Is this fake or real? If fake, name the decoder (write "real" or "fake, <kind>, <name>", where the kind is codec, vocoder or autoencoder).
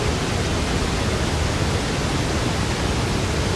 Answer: real